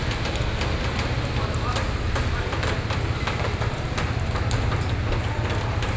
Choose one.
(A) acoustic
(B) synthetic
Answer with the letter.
A